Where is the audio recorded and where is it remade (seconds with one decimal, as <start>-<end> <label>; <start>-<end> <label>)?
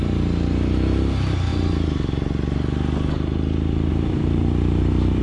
0.0-1.5 remade; 1.5-3.9 recorded; 3.9-5.2 remade